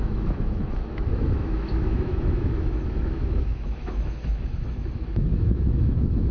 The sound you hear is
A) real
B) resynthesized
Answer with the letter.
B